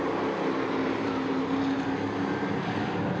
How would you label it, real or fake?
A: real